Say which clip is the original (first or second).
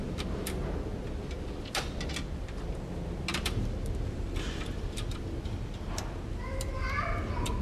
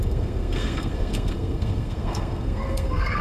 first